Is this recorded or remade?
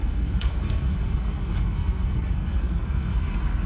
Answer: remade